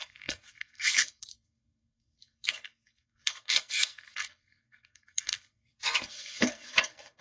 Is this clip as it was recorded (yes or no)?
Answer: no